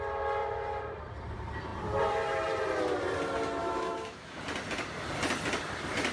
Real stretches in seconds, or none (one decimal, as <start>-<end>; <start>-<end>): 0.0-3.6; 4.4-6.1